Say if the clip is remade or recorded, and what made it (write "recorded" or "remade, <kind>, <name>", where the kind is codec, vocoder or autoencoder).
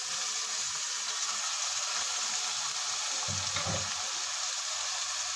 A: recorded